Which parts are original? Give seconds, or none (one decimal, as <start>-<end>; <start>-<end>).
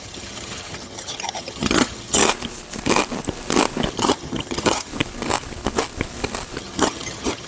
2.2-3.9; 4.9-6.6